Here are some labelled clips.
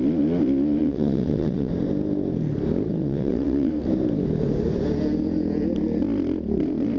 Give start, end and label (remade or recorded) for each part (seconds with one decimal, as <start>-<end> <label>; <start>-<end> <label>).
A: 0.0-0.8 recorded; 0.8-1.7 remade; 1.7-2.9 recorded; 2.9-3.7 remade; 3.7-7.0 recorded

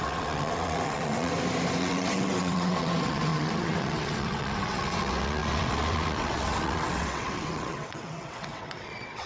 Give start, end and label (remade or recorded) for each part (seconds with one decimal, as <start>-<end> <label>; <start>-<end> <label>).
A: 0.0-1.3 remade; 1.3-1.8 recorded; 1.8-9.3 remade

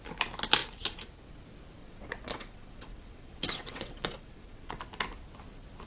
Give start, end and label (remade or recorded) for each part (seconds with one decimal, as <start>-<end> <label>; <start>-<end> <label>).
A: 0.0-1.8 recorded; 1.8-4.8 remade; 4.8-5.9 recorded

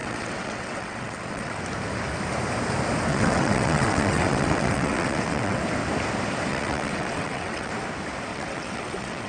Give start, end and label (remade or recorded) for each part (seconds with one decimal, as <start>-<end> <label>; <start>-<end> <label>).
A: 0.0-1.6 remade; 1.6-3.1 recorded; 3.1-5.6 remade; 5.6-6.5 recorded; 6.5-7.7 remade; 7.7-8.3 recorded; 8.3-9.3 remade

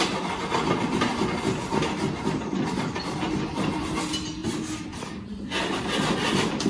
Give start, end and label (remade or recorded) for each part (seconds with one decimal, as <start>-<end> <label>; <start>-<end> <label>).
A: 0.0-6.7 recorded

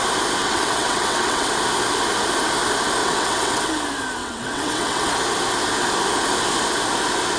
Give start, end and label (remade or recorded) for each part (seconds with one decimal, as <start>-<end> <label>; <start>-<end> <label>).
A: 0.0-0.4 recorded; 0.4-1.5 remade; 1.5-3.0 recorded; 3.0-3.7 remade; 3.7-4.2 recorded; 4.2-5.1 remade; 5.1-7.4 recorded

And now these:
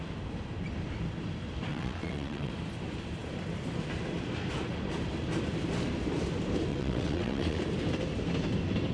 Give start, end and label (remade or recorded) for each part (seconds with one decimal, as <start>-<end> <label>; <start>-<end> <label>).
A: 0.0-1.7 recorded; 1.7-2.5 remade; 2.5-6.7 recorded; 6.7-7.6 remade; 7.6-8.9 recorded

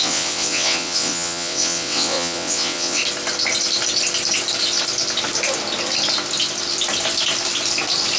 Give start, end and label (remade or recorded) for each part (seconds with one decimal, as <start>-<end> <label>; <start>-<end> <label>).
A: 0.0-3.0 remade; 3.0-8.2 recorded